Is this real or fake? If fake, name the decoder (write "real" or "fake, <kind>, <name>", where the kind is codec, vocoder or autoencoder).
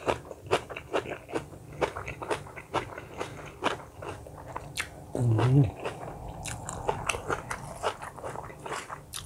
real